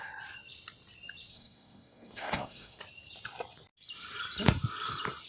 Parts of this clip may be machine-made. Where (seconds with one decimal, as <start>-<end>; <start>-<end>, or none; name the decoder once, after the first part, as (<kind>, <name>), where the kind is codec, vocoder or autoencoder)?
1.3-2.8 (codec, SNAC)